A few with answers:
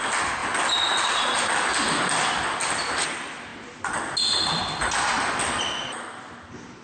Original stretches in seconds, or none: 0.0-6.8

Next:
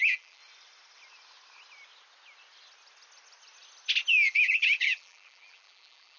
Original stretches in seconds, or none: 0.4-4.1

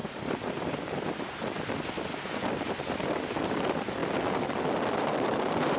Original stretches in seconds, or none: 3.1-5.8

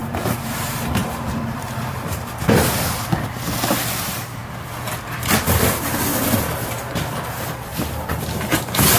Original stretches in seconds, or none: 2.6-9.0

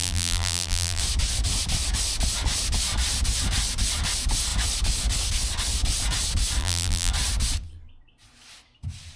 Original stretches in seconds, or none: 1.0-6.6; 7.1-9.2